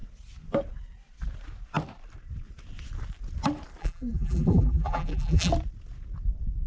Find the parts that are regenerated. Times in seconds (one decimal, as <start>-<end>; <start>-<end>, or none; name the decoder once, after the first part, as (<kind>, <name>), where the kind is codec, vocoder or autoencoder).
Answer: 3.8-5.5 (vocoder, BigVGAN v2)

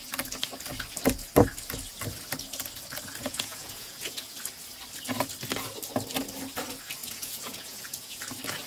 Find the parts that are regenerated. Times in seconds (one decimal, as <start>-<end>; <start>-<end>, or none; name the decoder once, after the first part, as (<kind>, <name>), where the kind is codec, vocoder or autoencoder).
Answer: 3.2-4.4 (vocoder, Vocos); 7.0-8.2